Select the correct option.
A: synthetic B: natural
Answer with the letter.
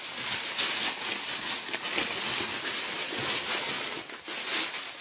B